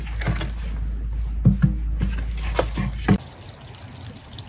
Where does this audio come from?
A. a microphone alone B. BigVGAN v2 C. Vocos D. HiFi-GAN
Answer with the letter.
A